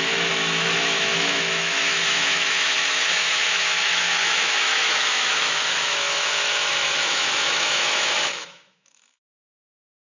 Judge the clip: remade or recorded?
remade